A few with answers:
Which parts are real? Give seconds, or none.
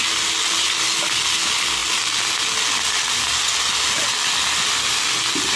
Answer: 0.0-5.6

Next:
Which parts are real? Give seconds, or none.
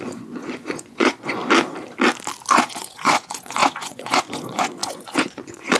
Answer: 1.4-2.5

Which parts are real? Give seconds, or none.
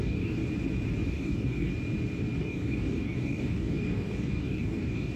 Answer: 0.4-1.1; 1.7-2.4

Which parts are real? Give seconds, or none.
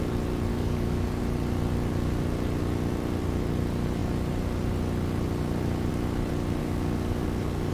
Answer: 0.0-0.5; 1.2-6.6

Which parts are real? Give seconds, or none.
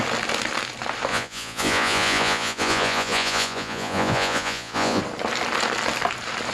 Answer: 0.0-1.1; 5.0-6.5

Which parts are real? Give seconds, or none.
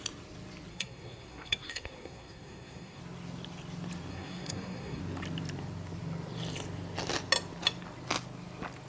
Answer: 0.0-0.7; 3.0-4.1; 5.0-8.9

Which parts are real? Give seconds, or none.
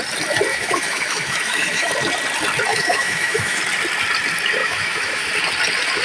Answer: 0.0-0.5; 1.9-2.7; 3.6-4.6; 5.3-6.0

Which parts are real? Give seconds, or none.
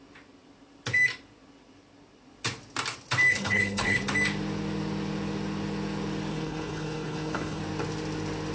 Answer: 0.0-3.3; 4.0-6.3; 7.6-8.5